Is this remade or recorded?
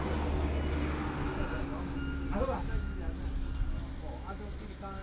recorded